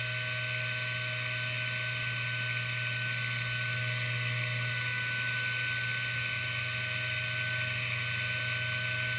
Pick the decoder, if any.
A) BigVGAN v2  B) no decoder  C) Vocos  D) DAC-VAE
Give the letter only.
B